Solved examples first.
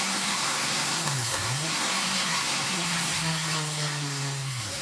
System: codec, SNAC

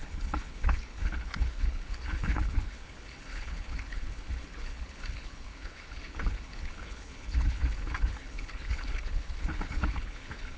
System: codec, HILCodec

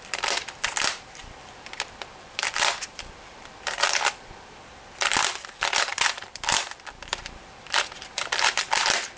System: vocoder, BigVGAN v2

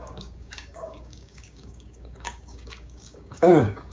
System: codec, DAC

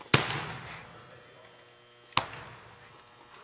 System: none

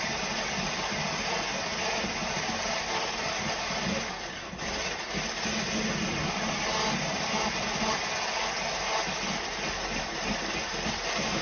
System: none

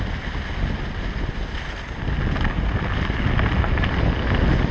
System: none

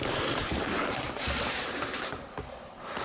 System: vocoder, BigVGAN v2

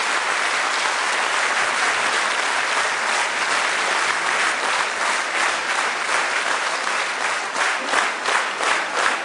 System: none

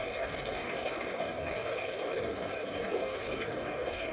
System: codec, DAC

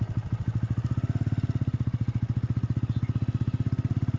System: none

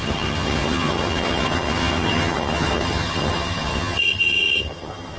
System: vocoder, HiFi-GAN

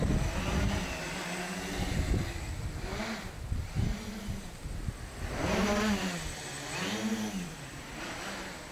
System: none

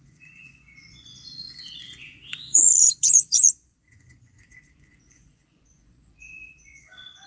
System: vocoder, Vocos